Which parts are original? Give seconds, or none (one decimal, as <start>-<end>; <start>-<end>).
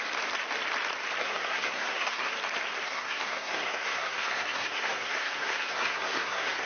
0.0-1.2; 2.3-2.8